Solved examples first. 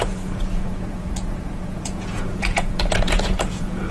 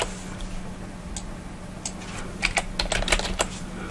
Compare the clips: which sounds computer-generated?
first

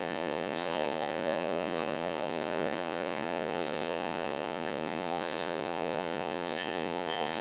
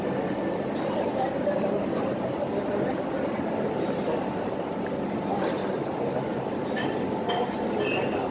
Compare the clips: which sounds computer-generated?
first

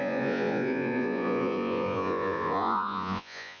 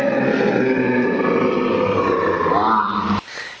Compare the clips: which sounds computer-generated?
first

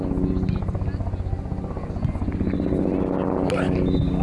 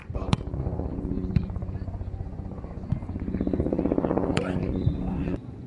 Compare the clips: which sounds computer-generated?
second